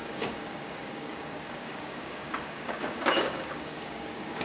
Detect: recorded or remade remade